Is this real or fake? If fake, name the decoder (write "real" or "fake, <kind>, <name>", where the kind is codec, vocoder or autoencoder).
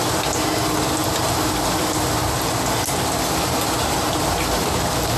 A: real